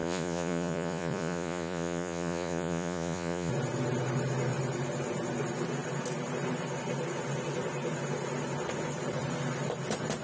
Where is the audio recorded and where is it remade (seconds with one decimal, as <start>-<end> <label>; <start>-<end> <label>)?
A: 0.0-3.5 remade; 3.5-10.2 recorded